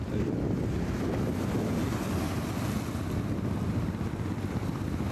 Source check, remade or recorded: recorded